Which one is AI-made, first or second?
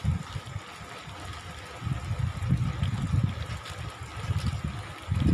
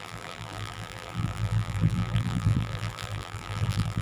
second